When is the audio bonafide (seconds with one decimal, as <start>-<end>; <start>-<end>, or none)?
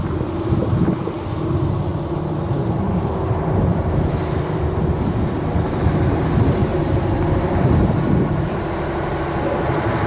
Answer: 0.0-3.7; 4.3-6.7; 9.2-10.1